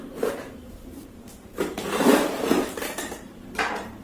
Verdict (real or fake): fake